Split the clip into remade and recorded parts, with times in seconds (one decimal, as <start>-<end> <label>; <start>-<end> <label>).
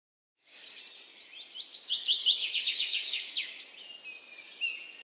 0.0-0.8 remade; 0.8-1.7 recorded; 1.7-3.6 remade; 3.6-5.0 recorded